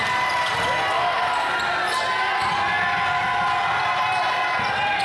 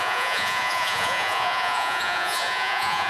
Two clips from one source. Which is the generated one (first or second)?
second